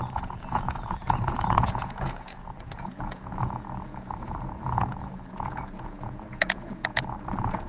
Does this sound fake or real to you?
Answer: fake